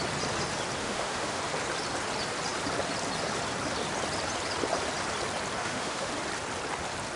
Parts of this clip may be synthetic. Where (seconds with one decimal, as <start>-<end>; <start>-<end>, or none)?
0.8-1.4; 5.6-6.1